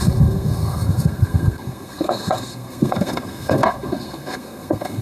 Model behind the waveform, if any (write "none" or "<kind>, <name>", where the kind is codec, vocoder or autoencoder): codec, SNAC